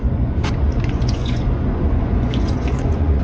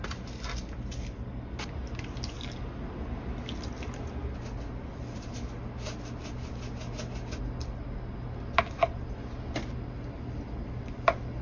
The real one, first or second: second